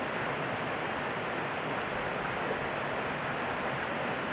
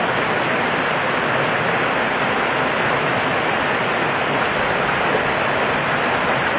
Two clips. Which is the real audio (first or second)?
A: second